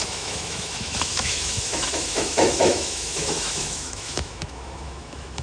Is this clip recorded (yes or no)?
no